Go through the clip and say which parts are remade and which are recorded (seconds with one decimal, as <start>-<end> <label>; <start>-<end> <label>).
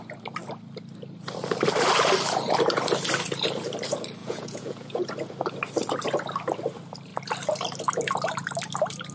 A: 0.0-4.2 recorded; 4.2-5.1 remade; 5.1-9.1 recorded